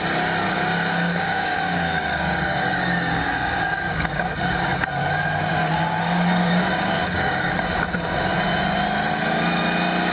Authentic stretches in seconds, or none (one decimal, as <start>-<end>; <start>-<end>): 0.0-1.0; 4.7-5.6; 7.6-10.1